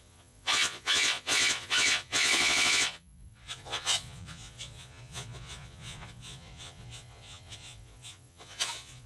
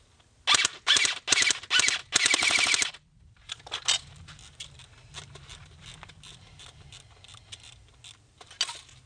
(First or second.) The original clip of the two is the second